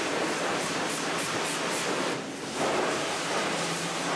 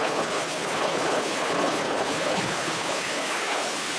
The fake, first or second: second